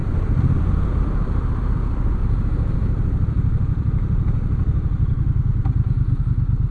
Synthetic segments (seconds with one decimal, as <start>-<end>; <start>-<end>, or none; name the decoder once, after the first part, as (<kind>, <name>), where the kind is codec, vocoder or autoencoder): 0.0-0.7 (vocoder, BigVGAN v2); 2.2-6.2